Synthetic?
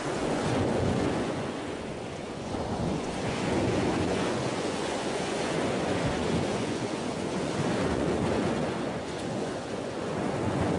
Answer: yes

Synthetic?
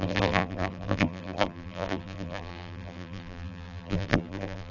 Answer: yes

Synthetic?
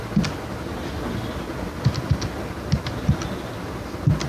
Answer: no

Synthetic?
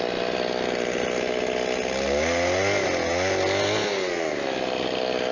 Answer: no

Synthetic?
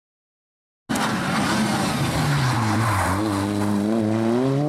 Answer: no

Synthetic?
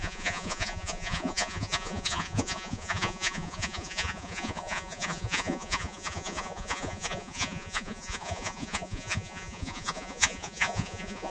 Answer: yes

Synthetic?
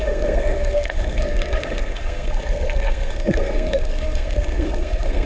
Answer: yes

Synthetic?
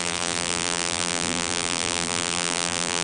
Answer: yes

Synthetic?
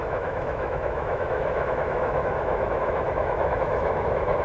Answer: yes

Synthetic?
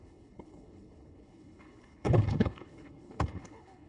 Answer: yes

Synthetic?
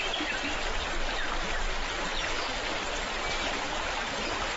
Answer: no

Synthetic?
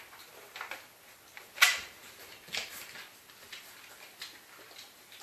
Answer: no